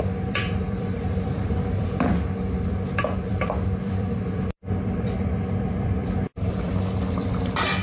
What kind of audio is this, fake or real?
fake